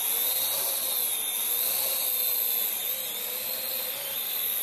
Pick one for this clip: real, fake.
real